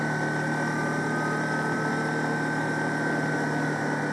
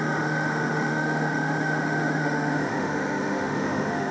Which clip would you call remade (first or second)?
second